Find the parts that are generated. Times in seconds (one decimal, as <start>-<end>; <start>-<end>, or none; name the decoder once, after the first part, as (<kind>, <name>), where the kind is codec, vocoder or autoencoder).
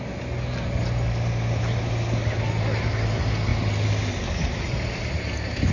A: none